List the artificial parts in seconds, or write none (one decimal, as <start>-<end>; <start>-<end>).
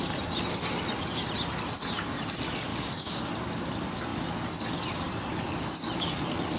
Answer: 2.7-3.2